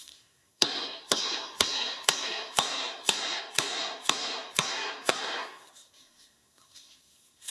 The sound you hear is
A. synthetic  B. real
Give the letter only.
A